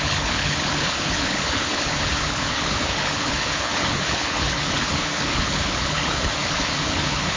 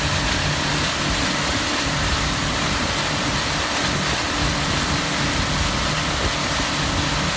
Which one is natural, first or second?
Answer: second